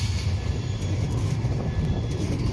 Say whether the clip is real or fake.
real